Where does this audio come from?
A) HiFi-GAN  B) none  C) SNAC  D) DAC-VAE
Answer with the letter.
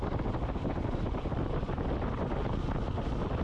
B